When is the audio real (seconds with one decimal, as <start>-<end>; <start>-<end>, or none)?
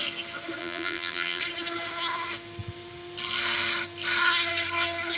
0.0-0.6; 1.4-5.2